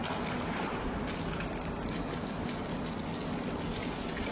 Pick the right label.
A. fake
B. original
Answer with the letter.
B